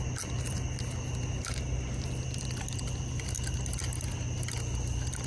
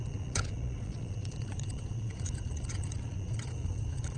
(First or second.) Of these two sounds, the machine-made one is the second